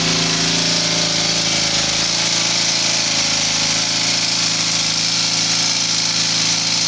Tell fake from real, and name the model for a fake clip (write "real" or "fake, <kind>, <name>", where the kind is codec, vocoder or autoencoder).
real